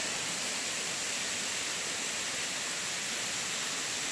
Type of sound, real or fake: real